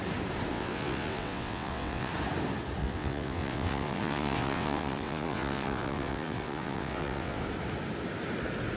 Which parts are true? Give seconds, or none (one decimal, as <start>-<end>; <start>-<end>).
0.0-0.5; 2.1-2.8; 7.4-8.8